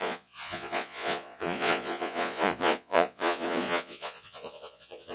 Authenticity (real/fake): fake